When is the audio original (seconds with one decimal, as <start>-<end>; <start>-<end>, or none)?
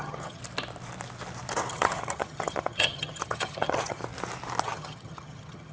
0.4-1.7; 4.0-4.6